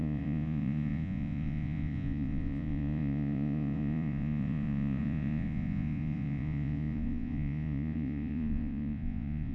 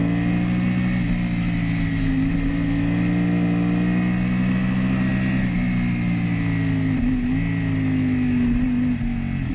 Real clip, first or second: second